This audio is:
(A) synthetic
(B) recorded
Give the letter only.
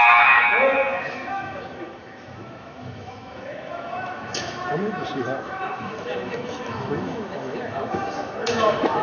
A